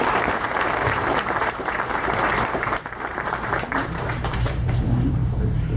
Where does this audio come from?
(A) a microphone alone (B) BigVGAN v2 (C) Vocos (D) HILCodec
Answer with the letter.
B